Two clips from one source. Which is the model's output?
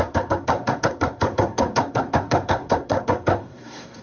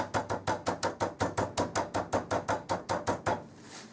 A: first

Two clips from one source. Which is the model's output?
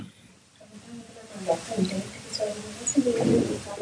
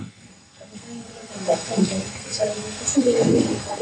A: second